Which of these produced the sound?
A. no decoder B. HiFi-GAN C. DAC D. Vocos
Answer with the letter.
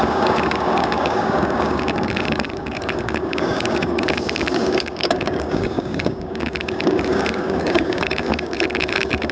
C